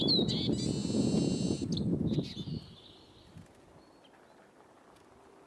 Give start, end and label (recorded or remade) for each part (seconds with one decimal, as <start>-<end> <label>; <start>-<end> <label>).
0.0-5.5 recorded